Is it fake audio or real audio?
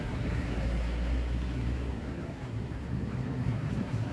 fake